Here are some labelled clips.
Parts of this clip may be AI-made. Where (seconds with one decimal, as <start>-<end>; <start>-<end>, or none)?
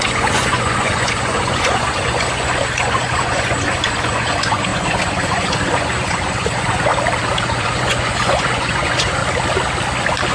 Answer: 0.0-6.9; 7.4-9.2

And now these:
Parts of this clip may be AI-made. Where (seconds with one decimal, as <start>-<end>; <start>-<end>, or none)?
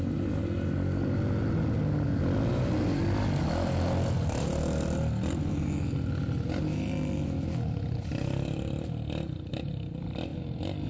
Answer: none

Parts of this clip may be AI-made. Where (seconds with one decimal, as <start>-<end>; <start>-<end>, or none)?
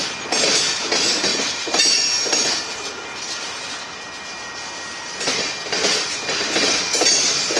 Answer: none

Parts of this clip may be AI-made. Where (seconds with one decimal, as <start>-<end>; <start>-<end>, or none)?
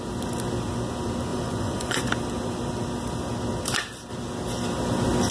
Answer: 1.3-2.0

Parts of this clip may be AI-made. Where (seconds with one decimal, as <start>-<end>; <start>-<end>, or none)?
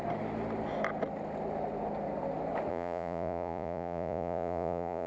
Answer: 2.7-5.1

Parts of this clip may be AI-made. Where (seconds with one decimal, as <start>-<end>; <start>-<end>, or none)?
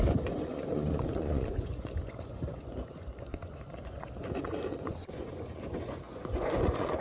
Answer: 0.0-7.0